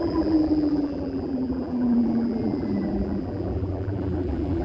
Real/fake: fake